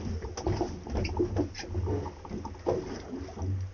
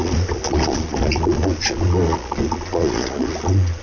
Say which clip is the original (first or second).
first